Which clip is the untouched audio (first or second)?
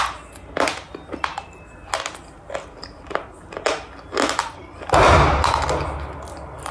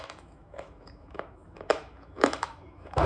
first